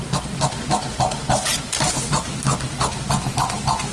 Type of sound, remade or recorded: recorded